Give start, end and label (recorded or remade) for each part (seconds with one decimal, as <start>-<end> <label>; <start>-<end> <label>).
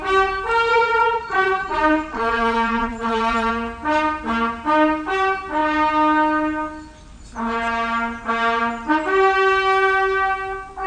0.0-0.7 recorded; 0.7-3.5 remade; 3.5-10.9 recorded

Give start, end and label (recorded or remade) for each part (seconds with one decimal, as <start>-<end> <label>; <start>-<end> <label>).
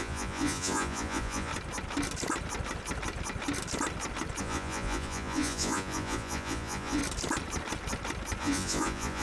0.0-1.5 remade; 1.5-4.4 recorded; 4.4-7.0 remade; 7.0-8.4 recorded; 8.4-9.2 remade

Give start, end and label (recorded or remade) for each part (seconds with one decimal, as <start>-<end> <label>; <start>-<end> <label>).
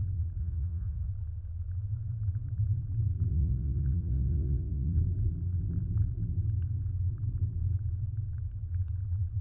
0.0-0.4 recorded; 0.4-1.1 remade; 1.1-3.3 recorded; 3.3-5.0 remade; 5.0-9.4 recorded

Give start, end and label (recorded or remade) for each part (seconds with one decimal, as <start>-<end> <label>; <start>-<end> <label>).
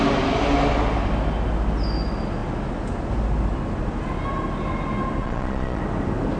0.0-5.2 recorded; 5.2-5.8 remade; 5.8-6.4 recorded